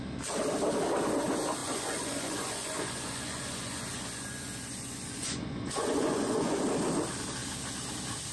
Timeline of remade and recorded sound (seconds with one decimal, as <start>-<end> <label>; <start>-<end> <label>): 0.0-1.6 recorded; 1.6-6.6 remade; 6.6-8.3 recorded